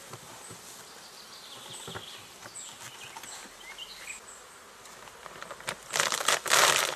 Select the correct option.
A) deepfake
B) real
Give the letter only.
B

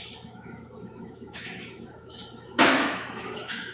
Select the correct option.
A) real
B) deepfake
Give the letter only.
B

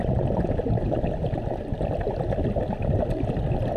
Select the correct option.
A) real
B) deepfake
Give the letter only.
A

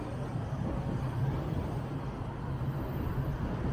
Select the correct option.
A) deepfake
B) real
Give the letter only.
B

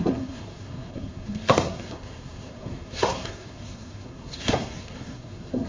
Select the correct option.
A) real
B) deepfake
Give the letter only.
B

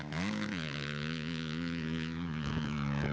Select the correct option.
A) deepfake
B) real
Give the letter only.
A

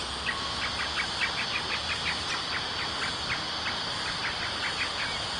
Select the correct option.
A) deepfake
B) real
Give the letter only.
B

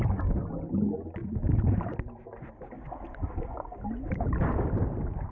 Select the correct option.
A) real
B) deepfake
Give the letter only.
A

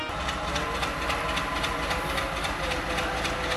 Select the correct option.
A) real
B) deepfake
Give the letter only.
A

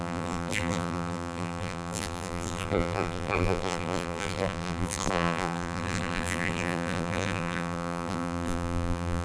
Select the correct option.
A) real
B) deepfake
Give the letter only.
B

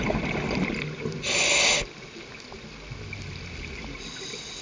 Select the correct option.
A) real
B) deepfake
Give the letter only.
A